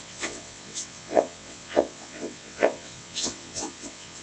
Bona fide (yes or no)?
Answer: no